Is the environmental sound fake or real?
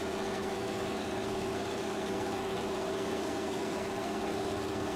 fake